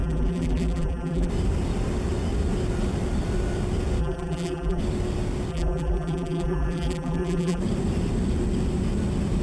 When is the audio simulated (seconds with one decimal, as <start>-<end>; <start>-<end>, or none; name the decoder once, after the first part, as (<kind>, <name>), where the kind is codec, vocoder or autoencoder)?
0.0-1.3 (vocoder, BigVGAN v2); 4.0-4.8; 5.5-7.6

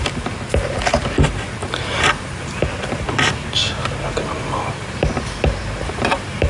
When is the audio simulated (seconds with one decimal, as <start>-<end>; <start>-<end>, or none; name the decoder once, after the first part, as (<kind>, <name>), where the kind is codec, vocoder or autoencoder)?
1.6-2.5 (vocoder, BigVGAN v2); 3.6-6.5

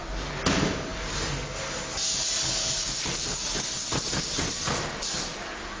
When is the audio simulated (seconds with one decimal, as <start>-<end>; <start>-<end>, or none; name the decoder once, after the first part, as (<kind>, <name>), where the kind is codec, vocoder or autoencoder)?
none

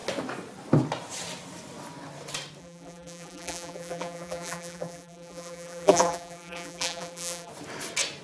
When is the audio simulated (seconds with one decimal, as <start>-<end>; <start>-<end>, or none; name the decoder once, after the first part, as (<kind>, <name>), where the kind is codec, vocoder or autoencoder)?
2.6-7.5 (vocoder, BigVGAN v2)

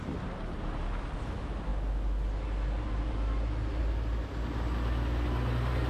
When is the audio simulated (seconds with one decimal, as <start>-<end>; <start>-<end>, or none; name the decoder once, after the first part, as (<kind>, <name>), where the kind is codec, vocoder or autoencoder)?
none

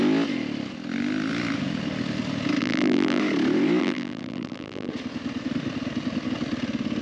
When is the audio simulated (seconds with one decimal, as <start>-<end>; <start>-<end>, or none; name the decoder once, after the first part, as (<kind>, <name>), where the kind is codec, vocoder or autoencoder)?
2.6-3.2 (vocoder, BigVGAN v2); 3.8-4.9